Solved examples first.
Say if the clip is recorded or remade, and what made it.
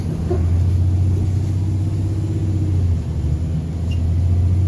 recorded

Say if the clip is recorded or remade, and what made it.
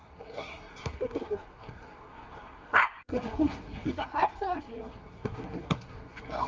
remade, codec, SNAC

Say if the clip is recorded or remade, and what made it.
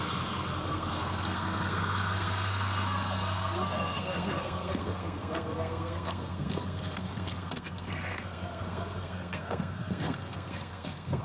remade, codec, SNAC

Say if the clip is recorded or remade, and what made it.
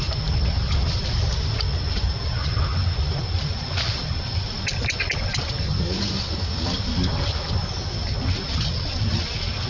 recorded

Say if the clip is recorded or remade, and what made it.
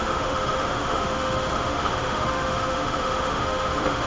remade, autoencoder, DAC-VAE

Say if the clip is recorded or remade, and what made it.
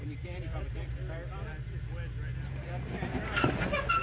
recorded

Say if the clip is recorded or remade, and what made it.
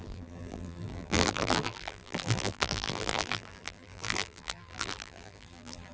remade, vocoder, BigVGAN v2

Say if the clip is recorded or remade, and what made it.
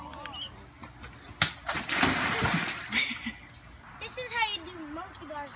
recorded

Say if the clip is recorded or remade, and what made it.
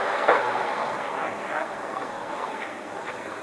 remade, codec, SNAC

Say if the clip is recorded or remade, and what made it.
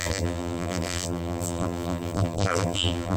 remade, vocoder, BigVGAN v2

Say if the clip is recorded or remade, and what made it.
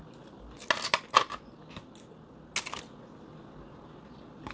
recorded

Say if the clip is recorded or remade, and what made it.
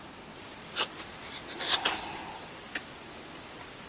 recorded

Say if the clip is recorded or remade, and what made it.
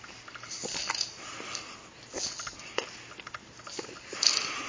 recorded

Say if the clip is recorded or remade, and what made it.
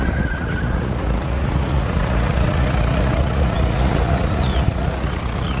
remade, vocoder, Vocos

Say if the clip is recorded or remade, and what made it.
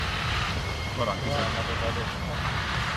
remade, vocoder, BigVGAN v2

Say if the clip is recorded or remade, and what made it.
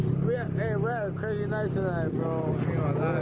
recorded